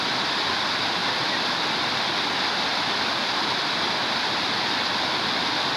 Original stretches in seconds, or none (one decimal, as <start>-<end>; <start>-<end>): 0.0-2.7; 4.4-5.8